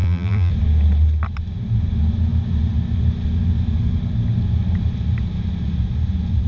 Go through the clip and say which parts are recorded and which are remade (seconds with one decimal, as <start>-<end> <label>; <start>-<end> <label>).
0.0-0.5 remade; 0.5-6.5 recorded